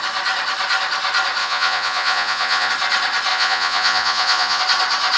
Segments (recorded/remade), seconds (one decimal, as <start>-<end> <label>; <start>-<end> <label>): 0.0-1.4 recorded; 1.4-2.7 remade; 2.7-3.3 recorded; 3.3-4.6 remade; 4.6-5.2 recorded